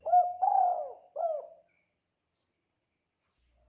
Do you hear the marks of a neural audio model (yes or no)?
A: no